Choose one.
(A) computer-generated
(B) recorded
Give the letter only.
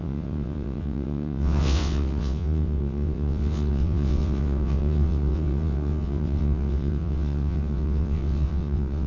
A